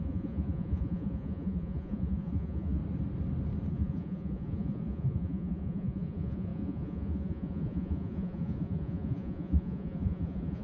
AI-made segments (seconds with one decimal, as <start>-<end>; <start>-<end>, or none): 0.0-2.8; 3.7-10.6